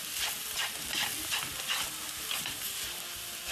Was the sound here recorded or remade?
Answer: recorded